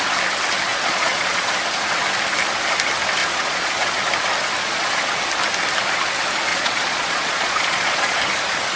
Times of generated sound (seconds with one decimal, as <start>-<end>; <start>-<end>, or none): 0.7-1.5; 3.2-4.0; 4.6-5.2; 6.5-8.2